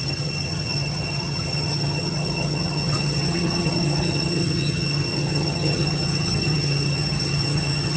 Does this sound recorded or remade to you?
remade